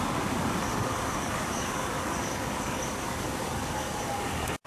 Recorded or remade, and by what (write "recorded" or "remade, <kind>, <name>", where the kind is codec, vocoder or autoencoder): remade, codec, DAC